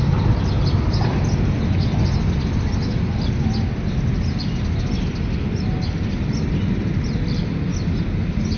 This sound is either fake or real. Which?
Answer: real